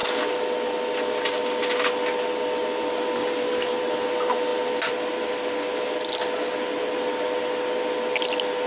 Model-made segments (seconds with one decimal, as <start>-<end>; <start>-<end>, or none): none